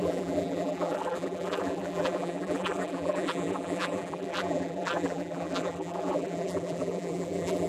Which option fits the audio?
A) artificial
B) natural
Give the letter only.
A